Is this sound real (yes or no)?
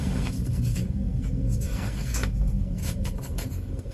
no